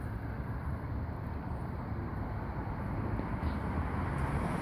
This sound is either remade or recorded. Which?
remade